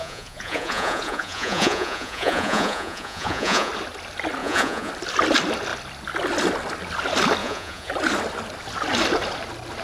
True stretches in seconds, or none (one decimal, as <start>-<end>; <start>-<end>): 3.7-4.4; 4.9-7.4; 7.9-9.8